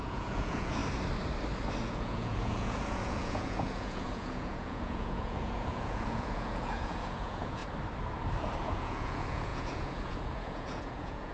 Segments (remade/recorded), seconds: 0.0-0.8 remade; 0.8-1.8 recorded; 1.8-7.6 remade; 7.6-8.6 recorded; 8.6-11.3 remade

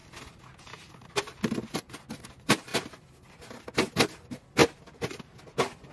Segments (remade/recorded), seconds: 0.0-5.9 recorded